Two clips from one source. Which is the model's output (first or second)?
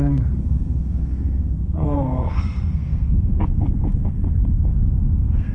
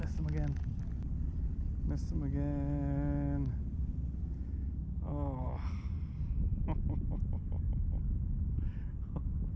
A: first